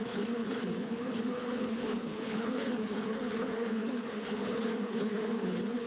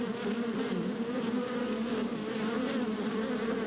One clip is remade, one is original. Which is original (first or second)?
second